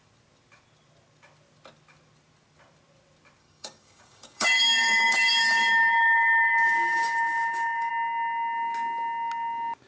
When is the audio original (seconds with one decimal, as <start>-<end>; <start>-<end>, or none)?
0.0-3.4; 7.9-9.9